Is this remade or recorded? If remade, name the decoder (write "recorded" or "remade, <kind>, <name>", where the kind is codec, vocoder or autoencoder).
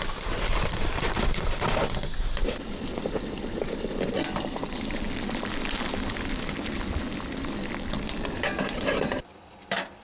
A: remade, vocoder, BigVGAN v2